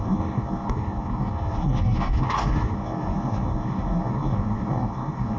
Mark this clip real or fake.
fake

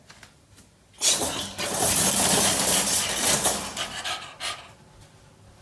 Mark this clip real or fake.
real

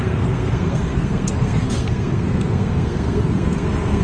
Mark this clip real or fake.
fake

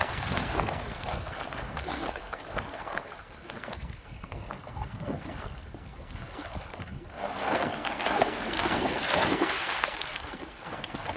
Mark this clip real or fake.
fake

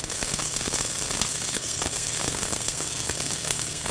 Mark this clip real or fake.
fake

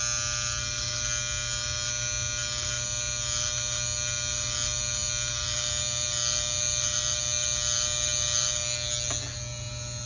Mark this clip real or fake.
real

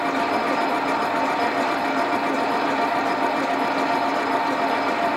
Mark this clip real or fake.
real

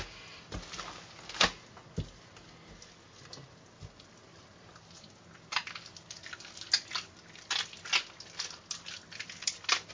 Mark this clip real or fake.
real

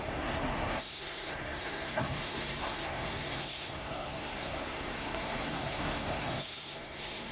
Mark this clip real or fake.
fake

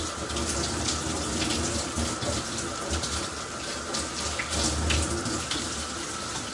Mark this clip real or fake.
real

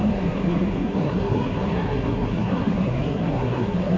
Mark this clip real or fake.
fake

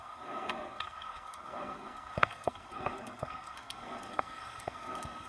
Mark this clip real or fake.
fake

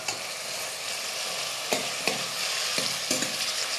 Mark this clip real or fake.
real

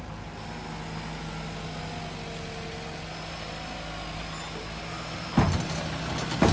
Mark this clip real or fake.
real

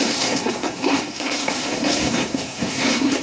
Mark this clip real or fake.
fake